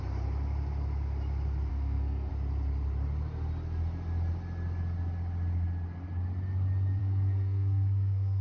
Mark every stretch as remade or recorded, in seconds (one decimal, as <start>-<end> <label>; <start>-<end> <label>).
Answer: 0.0-1.7 recorded; 1.7-2.3 remade; 2.3-7.0 recorded; 7.0-8.4 remade